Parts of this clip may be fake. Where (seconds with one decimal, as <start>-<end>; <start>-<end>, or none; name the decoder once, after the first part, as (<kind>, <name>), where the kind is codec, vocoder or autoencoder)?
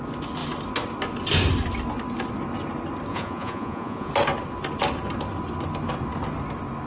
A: 3.1-4.1 (vocoder, Vocos)